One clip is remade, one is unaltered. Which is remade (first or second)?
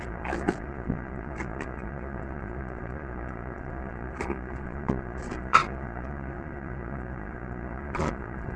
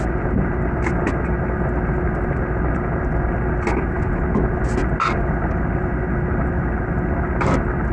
first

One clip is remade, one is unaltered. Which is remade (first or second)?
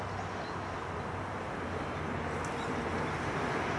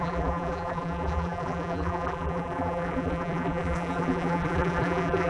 second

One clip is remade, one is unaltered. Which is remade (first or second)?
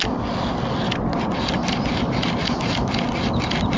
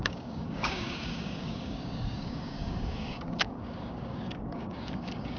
second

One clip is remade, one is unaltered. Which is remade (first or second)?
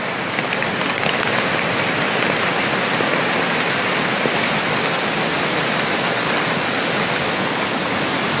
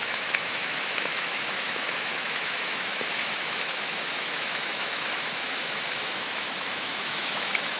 second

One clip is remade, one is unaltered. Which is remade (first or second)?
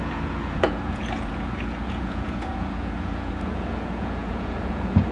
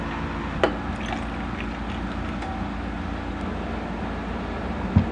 first